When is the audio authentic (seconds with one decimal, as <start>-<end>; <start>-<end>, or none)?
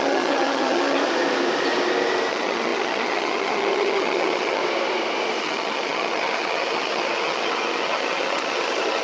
1.0-2.3; 4.6-5.4